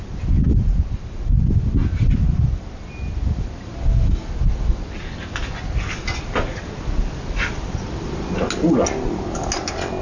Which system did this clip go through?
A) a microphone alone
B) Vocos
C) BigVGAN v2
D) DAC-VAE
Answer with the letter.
A